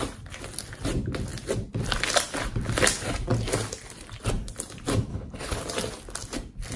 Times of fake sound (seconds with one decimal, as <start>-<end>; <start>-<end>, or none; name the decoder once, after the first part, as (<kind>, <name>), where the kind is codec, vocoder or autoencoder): 5.1-5.6 (codec, HILCodec)